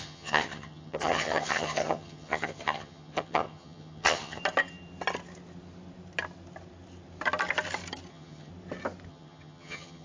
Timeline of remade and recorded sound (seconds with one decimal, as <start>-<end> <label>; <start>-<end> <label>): 0.0-4.4 remade; 4.4-8.1 recorded; 8.1-8.5 remade; 8.5-9.1 recorded; 9.1-10.0 remade